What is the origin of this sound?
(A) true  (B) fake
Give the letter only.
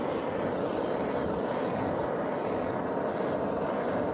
A